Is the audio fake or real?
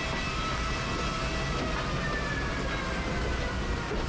real